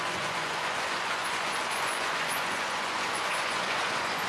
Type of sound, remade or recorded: remade